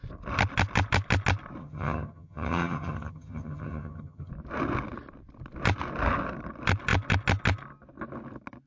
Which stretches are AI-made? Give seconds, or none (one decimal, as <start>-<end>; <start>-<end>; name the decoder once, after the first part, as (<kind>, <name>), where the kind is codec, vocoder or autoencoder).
1.6-4.3 (vocoder, HiFi-GAN)

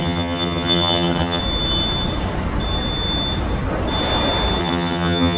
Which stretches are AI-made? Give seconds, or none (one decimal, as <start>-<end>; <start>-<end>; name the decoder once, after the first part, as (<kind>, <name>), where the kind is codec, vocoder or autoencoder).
0.0-1.4 (vocoder, HiFi-GAN); 4.6-5.4

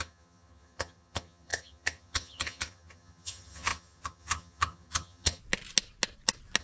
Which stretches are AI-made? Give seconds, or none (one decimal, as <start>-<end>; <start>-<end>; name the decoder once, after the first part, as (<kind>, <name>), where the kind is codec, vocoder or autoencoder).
0.0-5.4 (vocoder, HiFi-GAN)

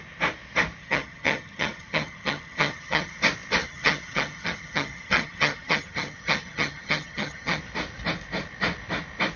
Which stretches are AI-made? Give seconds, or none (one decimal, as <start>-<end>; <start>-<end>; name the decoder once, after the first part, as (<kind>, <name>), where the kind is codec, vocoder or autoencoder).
0.8-3.2 (vocoder, HiFi-GAN); 3.6-7.6

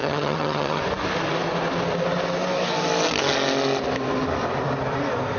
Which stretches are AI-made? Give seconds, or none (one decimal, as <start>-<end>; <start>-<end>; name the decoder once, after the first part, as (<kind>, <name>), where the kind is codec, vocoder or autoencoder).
0.0-0.8 (vocoder, HiFi-GAN)

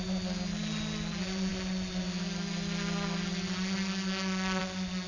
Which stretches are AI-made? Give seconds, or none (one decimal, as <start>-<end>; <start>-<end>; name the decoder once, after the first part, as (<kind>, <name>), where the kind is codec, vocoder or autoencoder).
none

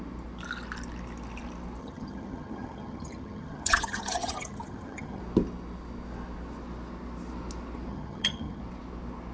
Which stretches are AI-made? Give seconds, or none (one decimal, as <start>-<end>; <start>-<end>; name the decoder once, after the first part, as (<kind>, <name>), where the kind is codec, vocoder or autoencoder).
1.8-5.2 (vocoder, HiFi-GAN); 7.9-8.6